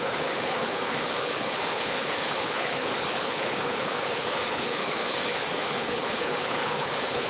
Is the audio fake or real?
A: fake